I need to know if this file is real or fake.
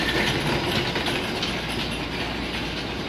real